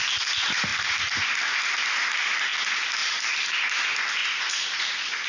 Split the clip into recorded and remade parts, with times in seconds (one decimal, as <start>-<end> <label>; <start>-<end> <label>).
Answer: 0.0-3.0 recorded; 3.0-3.6 remade; 3.6-4.2 recorded; 4.2-4.8 remade; 4.8-5.3 recorded